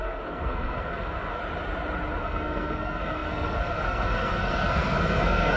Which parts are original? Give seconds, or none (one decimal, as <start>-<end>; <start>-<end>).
1.4-2.2